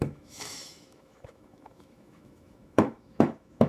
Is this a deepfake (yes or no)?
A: yes